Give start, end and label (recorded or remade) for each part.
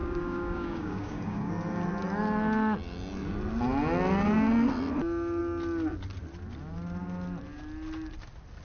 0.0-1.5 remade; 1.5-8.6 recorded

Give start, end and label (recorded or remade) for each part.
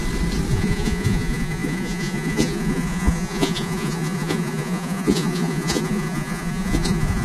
0.0-0.5 recorded; 0.5-7.2 remade